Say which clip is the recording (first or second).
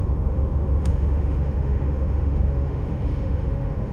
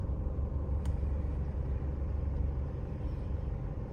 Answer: second